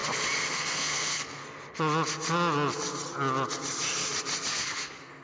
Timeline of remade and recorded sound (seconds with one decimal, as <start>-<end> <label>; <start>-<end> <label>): 0.0-0.5 recorded; 0.5-1.4 remade; 1.4-4.5 recorded; 4.5-5.2 remade